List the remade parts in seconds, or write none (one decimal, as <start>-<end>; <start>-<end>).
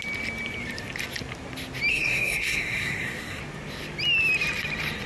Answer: 1.9-3.4